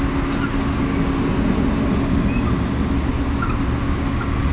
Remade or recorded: recorded